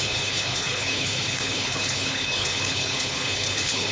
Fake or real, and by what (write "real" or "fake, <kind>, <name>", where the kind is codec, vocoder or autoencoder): fake, codec, HILCodec